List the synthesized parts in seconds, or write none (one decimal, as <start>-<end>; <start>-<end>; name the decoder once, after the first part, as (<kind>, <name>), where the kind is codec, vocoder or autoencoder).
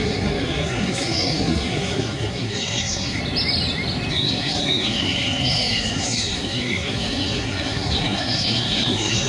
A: 0.0-3.2 (codec, SNAC); 4.1-9.3